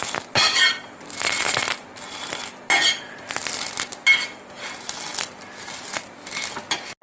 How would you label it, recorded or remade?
recorded